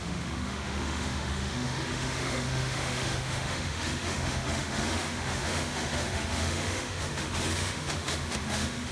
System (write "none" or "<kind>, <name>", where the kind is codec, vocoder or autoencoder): autoencoder, DAC-VAE